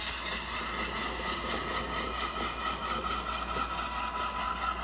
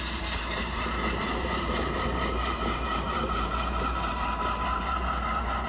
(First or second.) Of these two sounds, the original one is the first